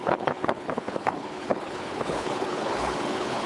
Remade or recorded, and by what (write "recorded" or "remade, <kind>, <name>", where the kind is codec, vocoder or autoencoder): remade, codec, HILCodec